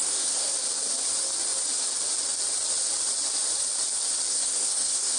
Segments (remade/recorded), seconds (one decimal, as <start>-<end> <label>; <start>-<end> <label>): 0.0-0.5 remade; 0.5-4.3 recorded; 4.3-5.2 remade